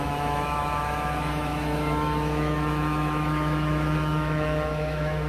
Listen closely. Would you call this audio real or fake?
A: fake